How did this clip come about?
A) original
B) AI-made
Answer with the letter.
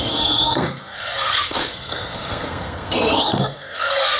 B